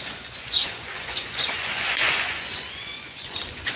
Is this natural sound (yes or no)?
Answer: no